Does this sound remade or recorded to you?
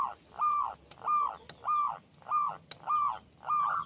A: recorded